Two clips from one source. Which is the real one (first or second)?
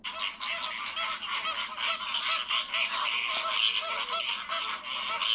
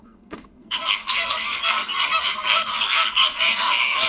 first